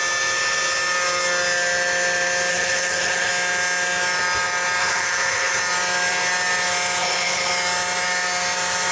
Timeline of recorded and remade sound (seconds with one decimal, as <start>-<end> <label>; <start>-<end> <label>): 0.0-2.5 recorded; 2.5-3.3 remade; 3.3-4.8 recorded; 4.8-5.6 remade; 5.6-7.0 recorded; 7.0-7.5 remade; 7.5-8.9 recorded